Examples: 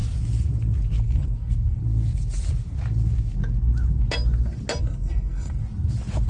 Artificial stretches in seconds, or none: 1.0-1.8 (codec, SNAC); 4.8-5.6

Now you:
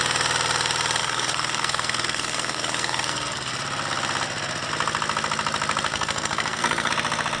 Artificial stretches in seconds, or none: 1.0-3.5 (codec, SNAC); 5.9-6.9

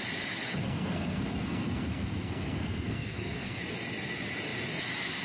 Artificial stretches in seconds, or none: 0.5-3.6 (codec, SNAC)

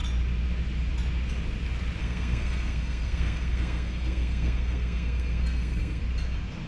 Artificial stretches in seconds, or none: 2.0-6.0 (codec, SNAC)

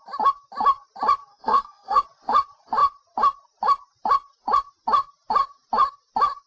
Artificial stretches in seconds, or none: 1.3-2.0 (codec, SNAC)